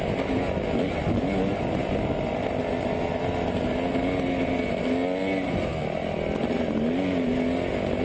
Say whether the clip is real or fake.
real